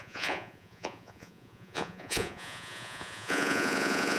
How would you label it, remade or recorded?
remade